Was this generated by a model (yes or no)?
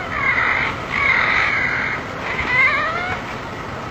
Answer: no